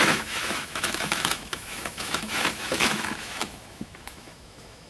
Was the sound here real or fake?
fake